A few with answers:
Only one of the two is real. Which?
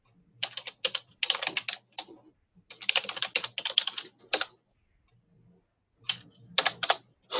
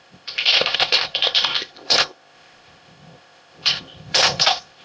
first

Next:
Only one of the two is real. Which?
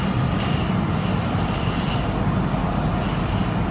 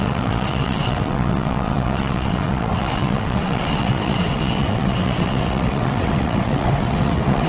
first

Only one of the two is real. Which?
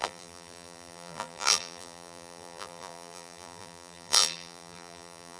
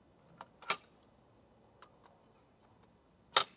second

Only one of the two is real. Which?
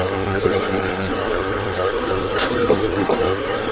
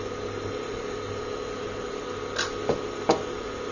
second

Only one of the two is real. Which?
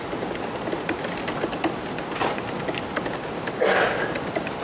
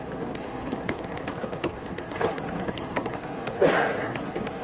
first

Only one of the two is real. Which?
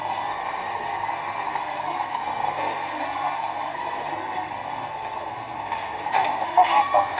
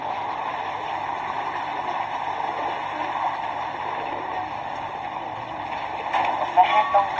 second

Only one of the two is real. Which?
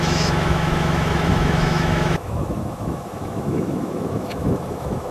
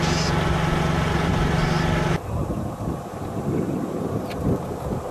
second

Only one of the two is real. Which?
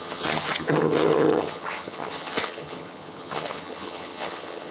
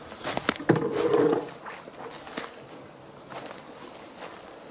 second